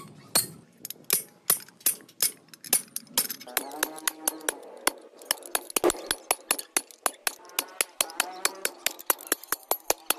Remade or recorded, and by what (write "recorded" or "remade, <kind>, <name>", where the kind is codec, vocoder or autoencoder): recorded